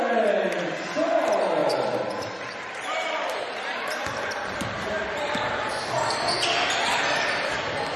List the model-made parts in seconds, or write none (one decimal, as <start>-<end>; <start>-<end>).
1.6-5.7